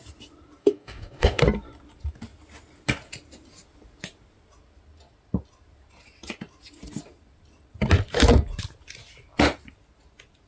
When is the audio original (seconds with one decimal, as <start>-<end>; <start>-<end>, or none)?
0.0-0.6; 1.4-10.5